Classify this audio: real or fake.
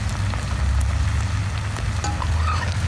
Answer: real